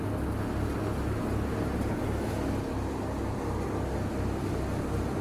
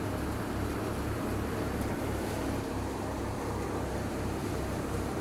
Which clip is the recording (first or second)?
first